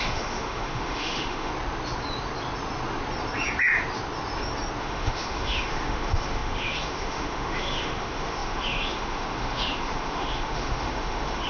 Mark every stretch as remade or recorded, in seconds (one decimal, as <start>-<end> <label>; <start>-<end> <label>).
0.0-1.5 remade; 1.5-4.8 recorded; 4.8-11.5 remade

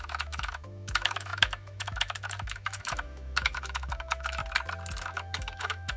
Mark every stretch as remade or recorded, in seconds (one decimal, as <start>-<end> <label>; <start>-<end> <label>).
0.0-4.4 remade; 4.4-5.0 recorded; 5.0-6.0 remade

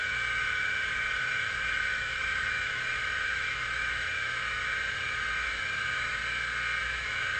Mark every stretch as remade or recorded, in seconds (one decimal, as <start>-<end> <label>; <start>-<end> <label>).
0.0-6.2 remade; 6.2-6.8 recorded; 6.8-7.4 remade

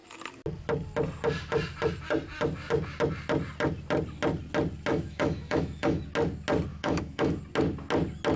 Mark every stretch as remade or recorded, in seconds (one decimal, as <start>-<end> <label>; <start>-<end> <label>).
0.0-4.9 recorded; 4.9-6.0 remade; 6.0-6.7 recorded; 6.7-7.4 remade; 7.4-8.4 recorded